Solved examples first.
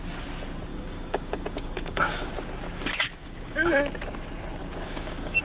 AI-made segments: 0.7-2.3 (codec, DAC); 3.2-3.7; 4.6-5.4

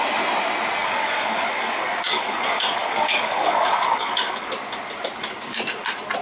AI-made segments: 0.8-4.5 (codec, DAC)